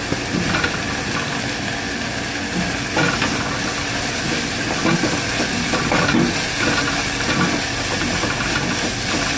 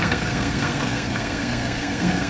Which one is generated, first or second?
second